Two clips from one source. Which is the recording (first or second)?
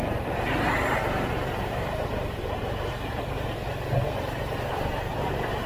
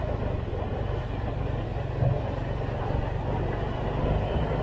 second